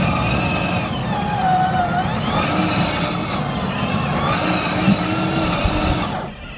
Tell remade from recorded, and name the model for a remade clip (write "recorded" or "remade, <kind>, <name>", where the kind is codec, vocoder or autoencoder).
recorded